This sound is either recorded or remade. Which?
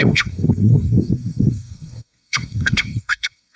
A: remade